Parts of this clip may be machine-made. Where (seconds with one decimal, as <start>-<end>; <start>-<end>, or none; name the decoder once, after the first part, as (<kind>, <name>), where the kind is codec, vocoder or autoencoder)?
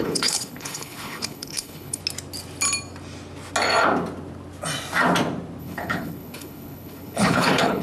0.0-2.0 (codec, HILCodec); 5.6-7.8